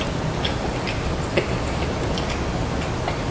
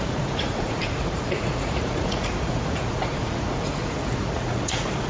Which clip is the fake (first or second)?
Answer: second